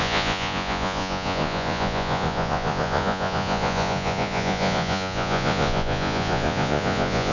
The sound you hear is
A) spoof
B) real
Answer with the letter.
A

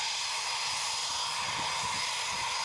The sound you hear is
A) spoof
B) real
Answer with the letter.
B